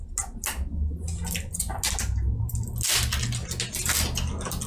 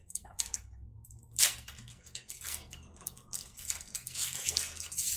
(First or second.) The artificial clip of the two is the second